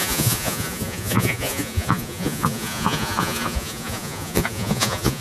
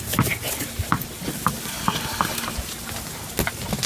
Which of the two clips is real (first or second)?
second